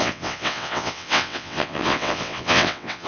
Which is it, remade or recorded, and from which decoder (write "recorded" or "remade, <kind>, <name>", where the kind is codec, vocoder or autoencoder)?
remade, vocoder, WaveNeXt